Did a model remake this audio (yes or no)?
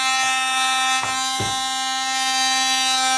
no